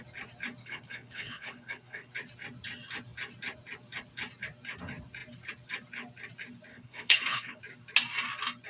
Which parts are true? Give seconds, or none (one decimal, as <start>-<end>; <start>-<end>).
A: 0.0-0.6; 2.1-6.7; 7.6-8.7